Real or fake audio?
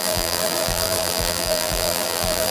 fake